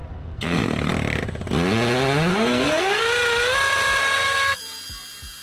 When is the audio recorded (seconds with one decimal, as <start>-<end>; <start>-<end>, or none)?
0.9-2.3; 3.0-4.0; 4.6-5.4